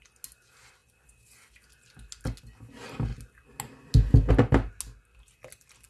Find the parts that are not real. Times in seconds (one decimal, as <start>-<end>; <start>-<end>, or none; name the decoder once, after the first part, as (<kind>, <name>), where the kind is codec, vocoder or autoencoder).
none